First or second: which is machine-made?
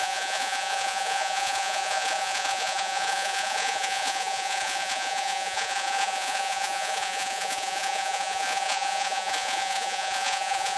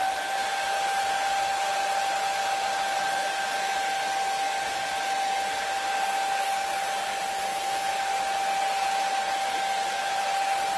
first